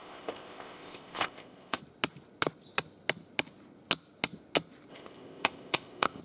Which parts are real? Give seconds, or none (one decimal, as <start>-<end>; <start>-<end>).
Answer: 1.8-4.9